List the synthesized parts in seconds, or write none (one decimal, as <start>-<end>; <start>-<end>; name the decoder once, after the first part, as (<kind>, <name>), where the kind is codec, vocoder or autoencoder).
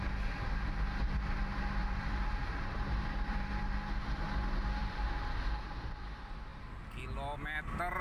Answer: 1.8-3.4 (vocoder, BigVGAN v2); 4.8-5.4